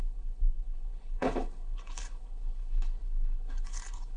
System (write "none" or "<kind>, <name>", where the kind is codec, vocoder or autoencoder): codec, HILCodec